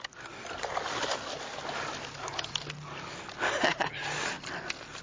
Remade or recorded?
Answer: recorded